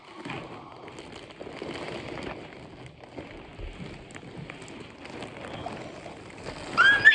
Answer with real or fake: real